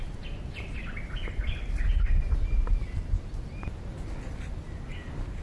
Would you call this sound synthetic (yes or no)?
no